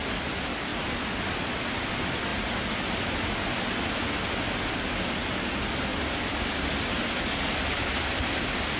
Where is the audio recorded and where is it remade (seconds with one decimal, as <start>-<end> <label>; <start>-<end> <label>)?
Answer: 0.0-2.3 recorded; 2.3-3.0 remade; 3.0-5.9 recorded; 5.9-8.4 remade; 8.4-8.8 recorded